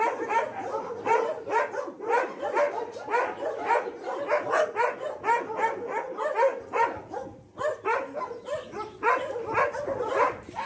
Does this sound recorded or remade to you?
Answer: recorded